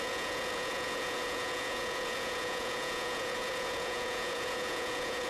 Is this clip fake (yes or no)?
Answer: yes